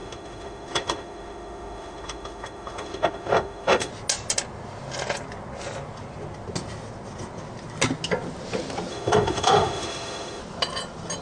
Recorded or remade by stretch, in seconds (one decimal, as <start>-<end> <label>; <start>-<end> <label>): 0.0-3.9 remade; 3.9-8.9 recorded; 8.9-10.4 remade; 10.4-11.2 recorded